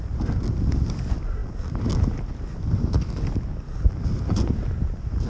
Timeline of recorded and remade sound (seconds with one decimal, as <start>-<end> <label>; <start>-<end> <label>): 0.0-5.3 recorded